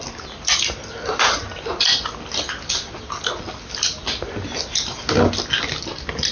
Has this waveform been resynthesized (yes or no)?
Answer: no